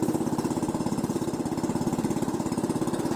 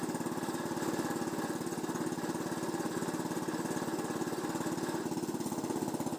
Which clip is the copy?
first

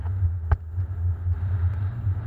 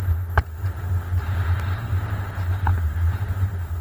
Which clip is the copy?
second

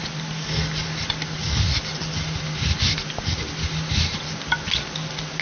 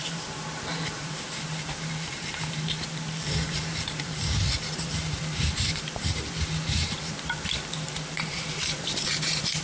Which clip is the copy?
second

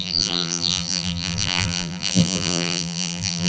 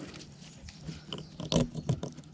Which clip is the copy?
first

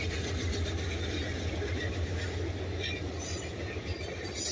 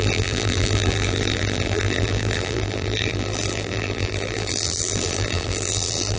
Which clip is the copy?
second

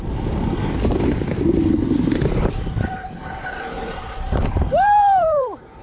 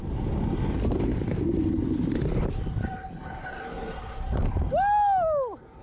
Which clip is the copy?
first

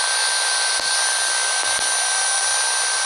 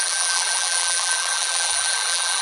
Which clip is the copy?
second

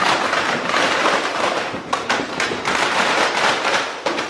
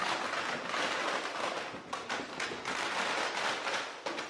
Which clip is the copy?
first